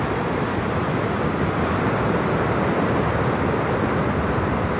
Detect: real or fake real